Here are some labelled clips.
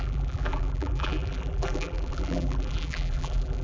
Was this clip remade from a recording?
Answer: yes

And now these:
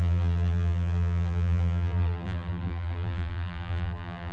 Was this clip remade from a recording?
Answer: yes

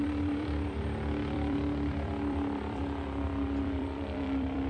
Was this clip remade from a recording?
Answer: yes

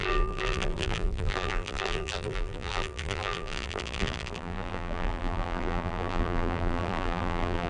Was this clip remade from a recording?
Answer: yes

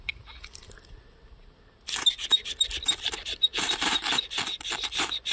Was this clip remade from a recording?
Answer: no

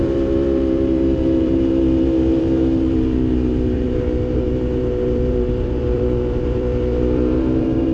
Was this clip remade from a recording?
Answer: yes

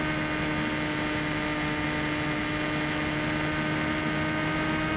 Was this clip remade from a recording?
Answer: no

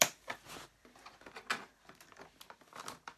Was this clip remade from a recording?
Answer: no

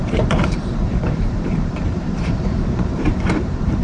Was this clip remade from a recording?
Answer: yes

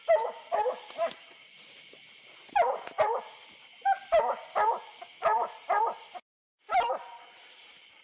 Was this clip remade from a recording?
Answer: no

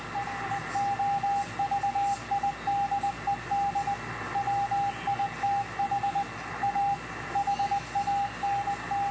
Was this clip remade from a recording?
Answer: no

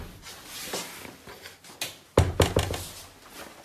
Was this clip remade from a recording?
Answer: no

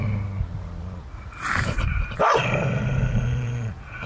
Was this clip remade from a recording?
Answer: yes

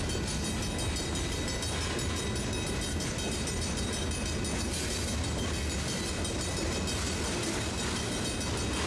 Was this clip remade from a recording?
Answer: no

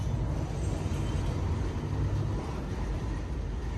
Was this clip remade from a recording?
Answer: no